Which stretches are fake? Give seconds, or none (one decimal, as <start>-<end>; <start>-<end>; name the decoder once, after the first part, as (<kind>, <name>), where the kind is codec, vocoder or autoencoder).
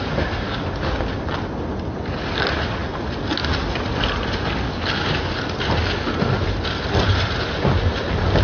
none